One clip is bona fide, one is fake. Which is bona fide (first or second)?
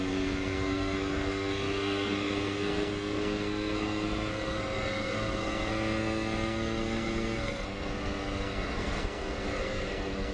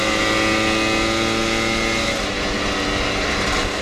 second